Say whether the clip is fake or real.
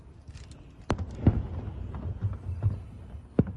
real